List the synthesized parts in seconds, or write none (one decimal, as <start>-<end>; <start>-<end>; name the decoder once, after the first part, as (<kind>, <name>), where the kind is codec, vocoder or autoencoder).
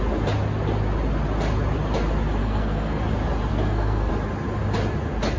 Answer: 2.4-3.0 (codec, SNAC); 3.5-4.1